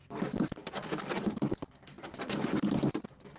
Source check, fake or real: real